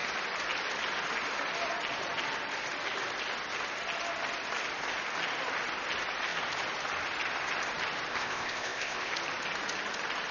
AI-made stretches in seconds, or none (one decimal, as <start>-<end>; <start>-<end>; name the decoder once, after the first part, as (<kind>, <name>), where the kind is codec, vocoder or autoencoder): 8.1-9.1 (codec, ZipCodec)